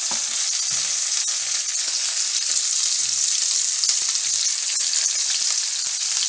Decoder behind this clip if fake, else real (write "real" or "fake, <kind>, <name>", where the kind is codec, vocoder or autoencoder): real